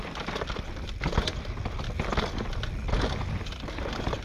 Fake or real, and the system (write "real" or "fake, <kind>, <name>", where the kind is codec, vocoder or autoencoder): real